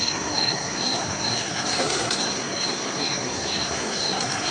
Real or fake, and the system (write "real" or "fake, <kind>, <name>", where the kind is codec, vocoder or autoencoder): fake, codec, SNAC